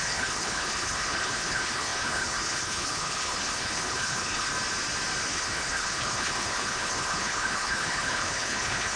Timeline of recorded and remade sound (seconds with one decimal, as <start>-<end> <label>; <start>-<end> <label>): 0.0-4.5 remade; 4.5-5.3 recorded; 5.3-9.0 remade

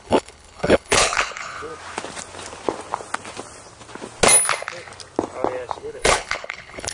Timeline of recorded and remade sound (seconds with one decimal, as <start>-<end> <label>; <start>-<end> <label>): 0.0-1.7 remade; 1.7-5.8 recorded; 5.8-6.9 remade